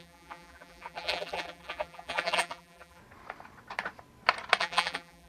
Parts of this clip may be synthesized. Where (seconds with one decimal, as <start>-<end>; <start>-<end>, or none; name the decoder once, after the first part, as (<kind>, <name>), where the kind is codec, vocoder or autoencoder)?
0.0-3.0 (vocoder, BigVGAN v2); 4.6-5.3